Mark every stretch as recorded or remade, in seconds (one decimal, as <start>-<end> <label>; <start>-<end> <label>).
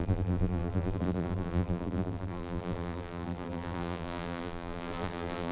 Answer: 0.0-5.5 remade